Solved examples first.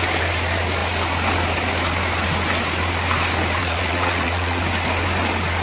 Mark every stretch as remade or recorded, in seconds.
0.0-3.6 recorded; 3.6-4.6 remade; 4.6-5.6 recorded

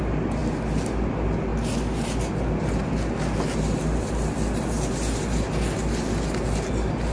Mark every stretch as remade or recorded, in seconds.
0.0-7.1 recorded

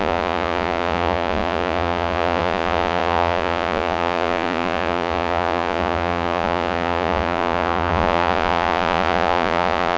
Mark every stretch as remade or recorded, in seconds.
0.0-10.0 remade

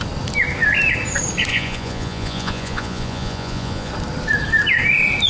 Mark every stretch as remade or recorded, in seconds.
0.0-1.5 recorded; 1.5-3.9 remade; 3.9-5.3 recorded